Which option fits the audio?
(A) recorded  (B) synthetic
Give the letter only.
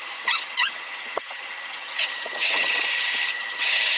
B